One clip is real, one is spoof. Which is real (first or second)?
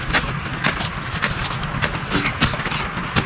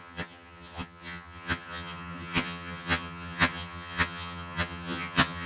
first